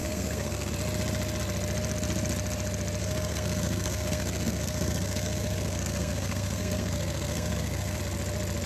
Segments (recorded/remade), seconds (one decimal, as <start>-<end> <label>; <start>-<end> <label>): 0.0-0.7 remade; 0.7-3.0 recorded; 3.0-8.0 remade; 8.0-8.7 recorded